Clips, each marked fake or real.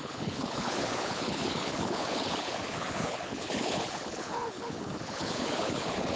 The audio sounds fake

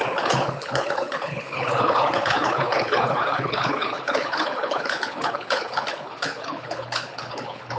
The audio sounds fake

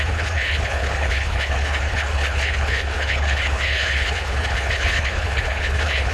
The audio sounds fake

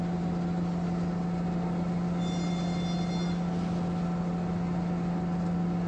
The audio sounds real